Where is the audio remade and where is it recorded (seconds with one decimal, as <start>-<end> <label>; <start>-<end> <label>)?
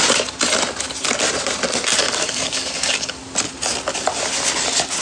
0.0-2.0 recorded; 2.0-3.2 remade; 3.2-5.0 recorded